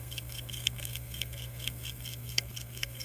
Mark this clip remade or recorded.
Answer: remade